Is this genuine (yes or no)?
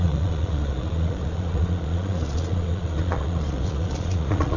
no